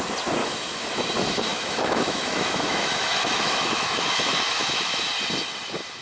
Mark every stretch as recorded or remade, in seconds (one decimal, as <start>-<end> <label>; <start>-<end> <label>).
0.0-0.4 recorded; 0.4-1.0 remade; 1.0-1.5 recorded; 1.5-5.1 remade; 5.1-6.0 recorded